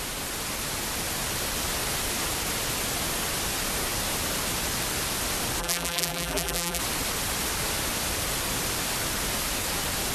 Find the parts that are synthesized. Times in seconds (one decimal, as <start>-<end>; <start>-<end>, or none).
5.6-6.8